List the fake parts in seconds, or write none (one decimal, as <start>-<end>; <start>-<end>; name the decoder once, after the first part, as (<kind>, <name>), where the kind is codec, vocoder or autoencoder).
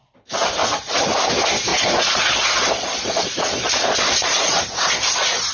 0.6-1.1 (vocoder, Vocos); 1.7-4.6